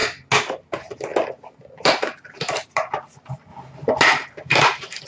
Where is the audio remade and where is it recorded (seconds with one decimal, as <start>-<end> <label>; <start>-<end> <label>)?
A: 0.0-5.1 recorded